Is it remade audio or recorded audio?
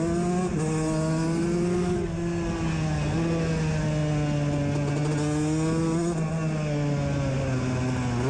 recorded